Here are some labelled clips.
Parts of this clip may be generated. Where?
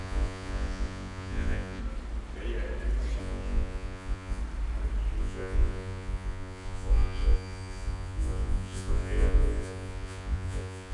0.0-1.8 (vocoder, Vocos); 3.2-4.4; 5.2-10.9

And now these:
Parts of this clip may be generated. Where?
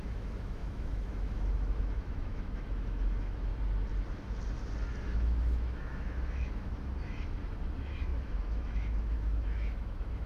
0.0-3.5 (autoencoder, DAC-VAE); 5.0-10.3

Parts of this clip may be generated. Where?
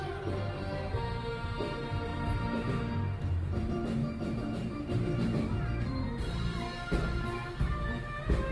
0.0-2.1 (vocoder, BigVGAN v2); 3.5-8.5